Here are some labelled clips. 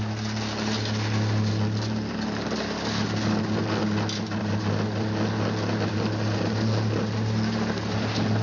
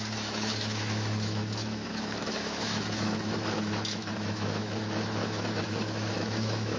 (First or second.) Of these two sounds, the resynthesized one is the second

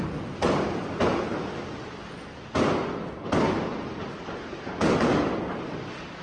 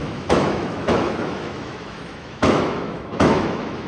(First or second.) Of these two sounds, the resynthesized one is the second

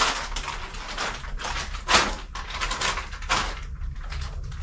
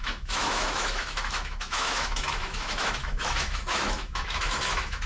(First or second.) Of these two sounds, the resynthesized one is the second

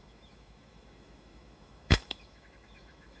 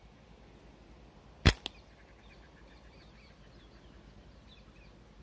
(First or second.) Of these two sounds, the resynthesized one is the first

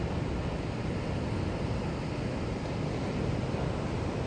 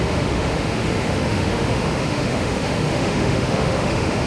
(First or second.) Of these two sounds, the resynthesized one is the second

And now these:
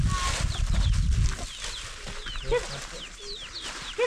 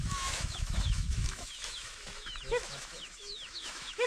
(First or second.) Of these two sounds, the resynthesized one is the second